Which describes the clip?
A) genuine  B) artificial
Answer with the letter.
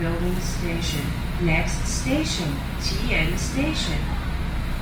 A